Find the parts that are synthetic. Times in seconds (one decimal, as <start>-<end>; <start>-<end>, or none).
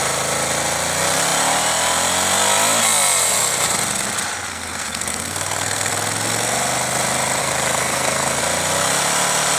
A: 4.5-5.9; 7.4-8.4